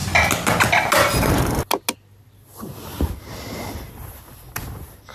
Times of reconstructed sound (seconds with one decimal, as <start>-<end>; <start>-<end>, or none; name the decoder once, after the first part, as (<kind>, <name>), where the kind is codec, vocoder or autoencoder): none